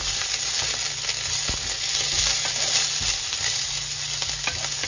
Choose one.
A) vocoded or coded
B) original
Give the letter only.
B